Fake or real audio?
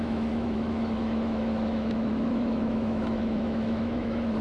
fake